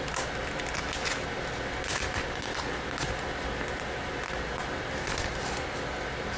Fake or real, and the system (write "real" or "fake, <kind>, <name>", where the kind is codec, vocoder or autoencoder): real